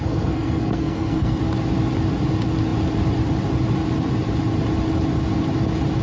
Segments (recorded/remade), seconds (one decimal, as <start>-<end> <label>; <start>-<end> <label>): 0.0-1.4 remade; 1.4-6.0 recorded